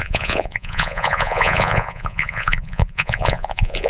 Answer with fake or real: fake